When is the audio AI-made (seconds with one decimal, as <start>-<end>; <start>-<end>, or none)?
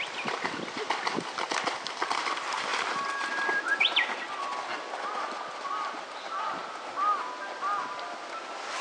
none